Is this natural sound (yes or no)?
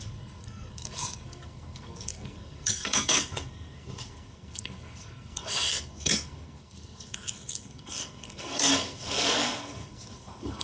no